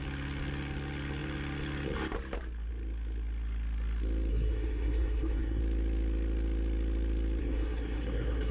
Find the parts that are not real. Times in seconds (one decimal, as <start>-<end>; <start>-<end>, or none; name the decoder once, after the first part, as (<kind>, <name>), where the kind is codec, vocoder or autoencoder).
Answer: 4.3-5.6 (codec, SNAC); 7.4-8.5